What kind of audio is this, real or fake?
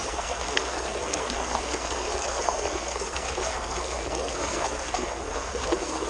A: fake